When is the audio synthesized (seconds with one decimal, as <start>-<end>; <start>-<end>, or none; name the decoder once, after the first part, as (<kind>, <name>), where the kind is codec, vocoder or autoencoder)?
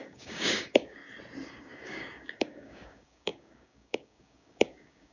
0.0-1.0 (codec, DAC); 1.5-5.1